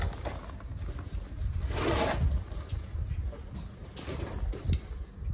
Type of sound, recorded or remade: recorded